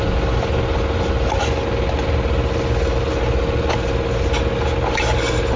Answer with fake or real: real